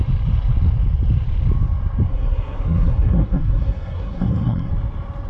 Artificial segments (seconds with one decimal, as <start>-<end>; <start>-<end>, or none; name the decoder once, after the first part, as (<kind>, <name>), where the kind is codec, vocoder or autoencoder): 2.1-4.7 (codec, SNAC)